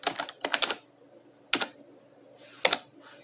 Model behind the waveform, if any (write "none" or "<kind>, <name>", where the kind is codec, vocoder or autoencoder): none